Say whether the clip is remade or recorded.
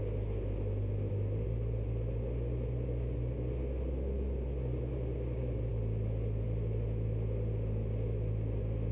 recorded